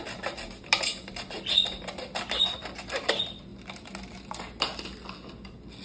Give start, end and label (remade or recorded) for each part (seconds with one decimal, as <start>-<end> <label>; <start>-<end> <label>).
0.0-5.8 recorded

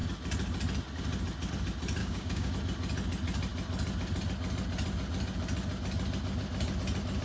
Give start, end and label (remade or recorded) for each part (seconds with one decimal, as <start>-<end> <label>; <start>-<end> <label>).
0.0-2.0 recorded; 2.0-2.5 remade; 2.5-7.2 recorded

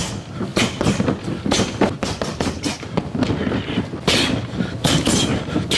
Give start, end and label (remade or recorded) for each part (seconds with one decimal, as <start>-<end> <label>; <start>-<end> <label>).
0.0-5.8 recorded

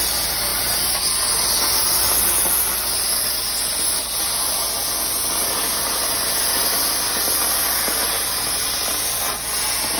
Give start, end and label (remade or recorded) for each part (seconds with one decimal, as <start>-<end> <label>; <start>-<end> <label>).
0.0-10.0 recorded

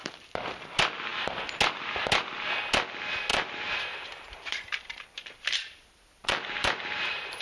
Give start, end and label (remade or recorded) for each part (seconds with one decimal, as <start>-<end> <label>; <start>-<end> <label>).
0.0-3.3 recorded; 3.3-7.4 remade

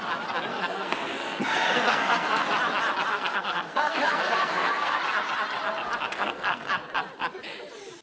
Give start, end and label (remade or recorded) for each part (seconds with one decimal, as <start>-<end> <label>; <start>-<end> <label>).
0.0-0.5 recorded; 0.5-2.4 remade; 2.4-3.1 recorded; 3.1-5.0 remade; 5.0-6.1 recorded; 6.1-6.7 remade; 6.7-8.0 recorded